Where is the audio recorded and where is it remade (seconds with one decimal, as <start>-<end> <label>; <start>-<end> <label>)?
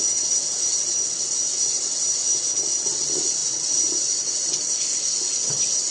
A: 0.0-5.9 recorded